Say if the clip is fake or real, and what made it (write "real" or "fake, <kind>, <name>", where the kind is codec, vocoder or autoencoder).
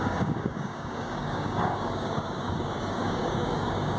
fake, codec, DAC